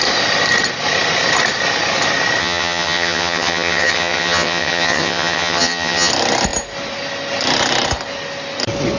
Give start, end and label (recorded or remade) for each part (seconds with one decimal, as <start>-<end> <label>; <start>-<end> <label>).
0.0-2.4 recorded; 2.4-6.1 remade; 6.1-9.0 recorded